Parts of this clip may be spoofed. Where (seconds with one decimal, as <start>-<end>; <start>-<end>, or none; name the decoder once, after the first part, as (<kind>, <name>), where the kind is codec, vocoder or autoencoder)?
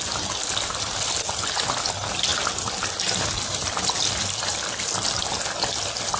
none